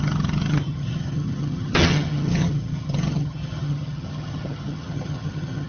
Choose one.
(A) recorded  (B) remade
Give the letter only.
B